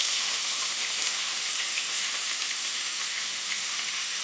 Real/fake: fake